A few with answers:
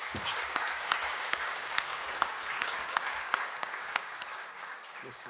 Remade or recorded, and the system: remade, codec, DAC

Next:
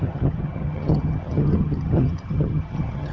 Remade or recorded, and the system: remade, vocoder, HiFi-GAN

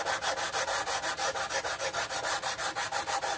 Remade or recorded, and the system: recorded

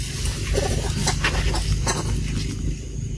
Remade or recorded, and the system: recorded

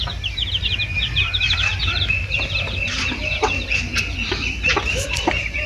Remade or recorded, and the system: recorded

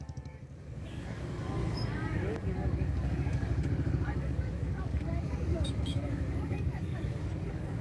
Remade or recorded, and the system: remade, codec, DAC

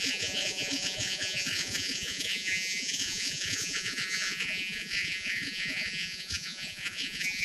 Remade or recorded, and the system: remade, vocoder, Vocos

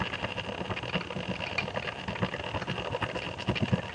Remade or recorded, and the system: recorded